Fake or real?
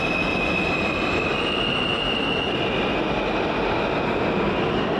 real